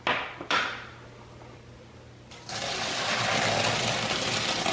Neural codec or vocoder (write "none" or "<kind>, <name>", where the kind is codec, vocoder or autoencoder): none